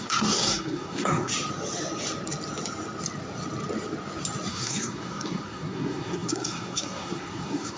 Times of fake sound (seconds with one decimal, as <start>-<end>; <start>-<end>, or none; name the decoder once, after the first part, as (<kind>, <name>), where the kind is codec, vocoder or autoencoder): 0.0-1.3 (codec, SNAC); 4.5-7.8